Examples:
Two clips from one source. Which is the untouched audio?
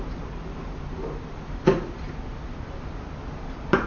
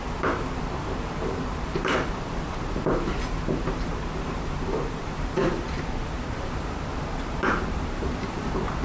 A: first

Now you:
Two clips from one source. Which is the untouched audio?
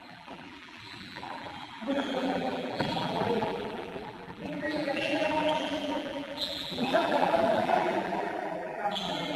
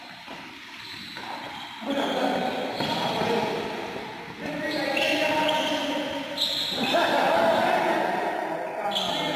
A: second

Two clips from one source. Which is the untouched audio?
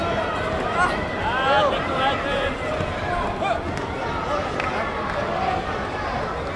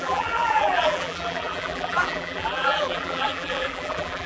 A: first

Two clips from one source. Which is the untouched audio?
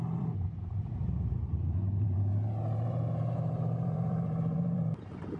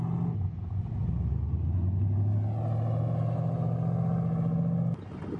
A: second